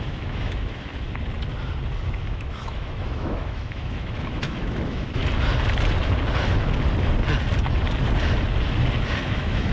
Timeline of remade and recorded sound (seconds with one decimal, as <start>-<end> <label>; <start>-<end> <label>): 0.0-0.9 remade; 0.9-2.3 recorded; 2.3-5.2 remade; 5.2-9.2 recorded; 9.2-9.7 remade